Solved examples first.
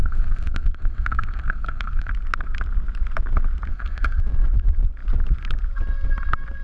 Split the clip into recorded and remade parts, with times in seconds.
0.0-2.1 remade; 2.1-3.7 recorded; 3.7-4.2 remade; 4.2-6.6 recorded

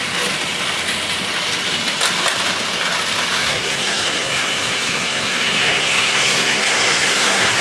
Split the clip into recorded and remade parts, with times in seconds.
0.0-3.4 recorded; 3.4-7.6 remade

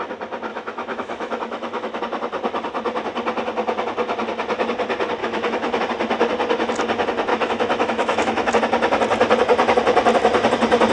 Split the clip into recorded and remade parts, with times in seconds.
0.0-0.5 recorded; 0.5-2.0 remade; 2.0-5.2 recorded; 5.2-5.8 remade; 5.8-7.3 recorded; 7.3-8.5 remade; 8.5-10.9 recorded